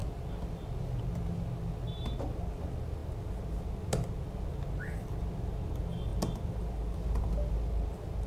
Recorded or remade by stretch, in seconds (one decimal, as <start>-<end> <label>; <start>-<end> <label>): 0.0-8.3 recorded